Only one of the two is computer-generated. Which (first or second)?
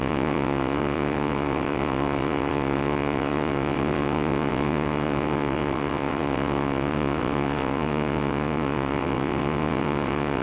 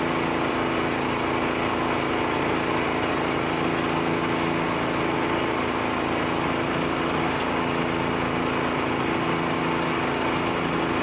first